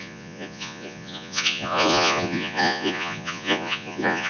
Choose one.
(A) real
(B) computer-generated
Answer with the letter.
B